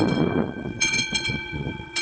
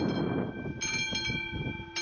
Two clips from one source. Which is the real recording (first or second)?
second